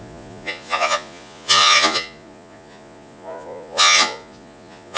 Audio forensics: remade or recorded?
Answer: remade